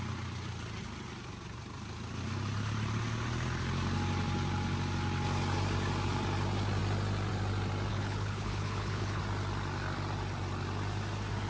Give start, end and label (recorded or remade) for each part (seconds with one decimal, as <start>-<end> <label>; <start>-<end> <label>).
0.0-7.9 recorded; 7.9-9.2 remade; 9.2-11.5 recorded